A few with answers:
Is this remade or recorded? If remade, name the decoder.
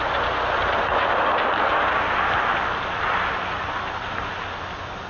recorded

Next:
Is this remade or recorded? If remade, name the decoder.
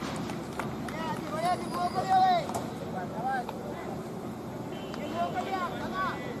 recorded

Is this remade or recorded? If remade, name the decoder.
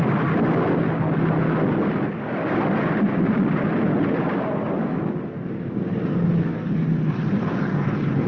recorded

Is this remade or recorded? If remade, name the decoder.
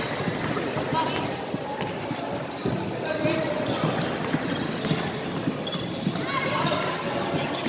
recorded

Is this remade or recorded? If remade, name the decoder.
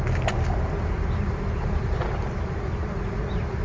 recorded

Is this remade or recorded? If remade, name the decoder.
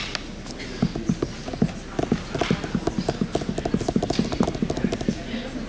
recorded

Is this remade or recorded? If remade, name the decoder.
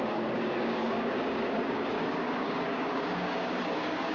remade, codec, DAC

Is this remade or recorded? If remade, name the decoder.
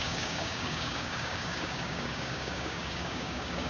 remade, codec, DAC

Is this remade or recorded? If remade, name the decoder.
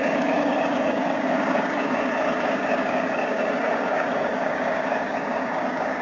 remade, codec, DAC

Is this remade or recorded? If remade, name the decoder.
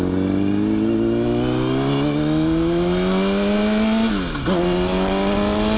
recorded